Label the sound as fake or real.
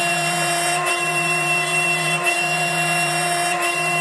fake